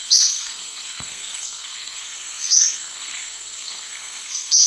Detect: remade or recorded remade